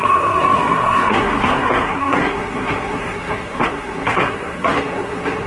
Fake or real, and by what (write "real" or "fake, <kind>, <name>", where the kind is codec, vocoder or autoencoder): fake, codec, SNAC